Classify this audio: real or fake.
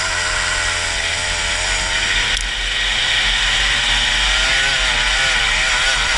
real